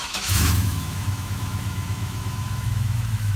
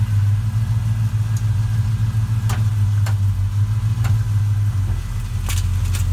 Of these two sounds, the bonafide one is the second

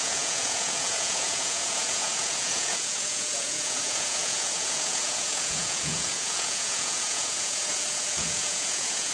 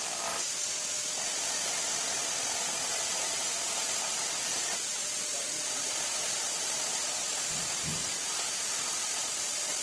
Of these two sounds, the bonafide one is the second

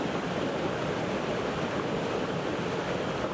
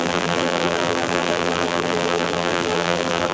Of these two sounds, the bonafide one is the first